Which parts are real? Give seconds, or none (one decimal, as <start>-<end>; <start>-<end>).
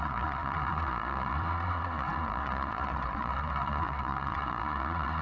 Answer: none